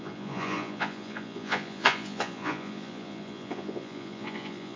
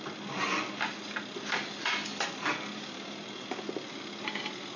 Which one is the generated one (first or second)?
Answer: first